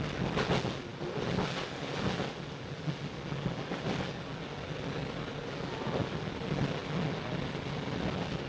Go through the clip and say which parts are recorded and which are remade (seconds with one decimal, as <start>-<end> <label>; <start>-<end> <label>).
0.0-8.5 recorded